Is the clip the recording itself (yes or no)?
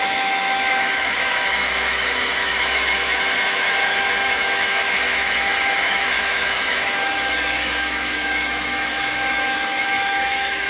no